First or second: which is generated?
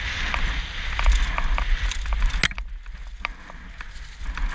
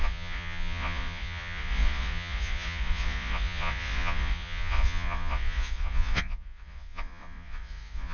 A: second